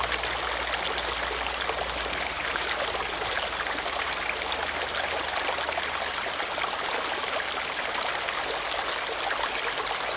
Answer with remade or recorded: recorded